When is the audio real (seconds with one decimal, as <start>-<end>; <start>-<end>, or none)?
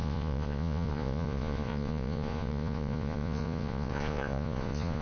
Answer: none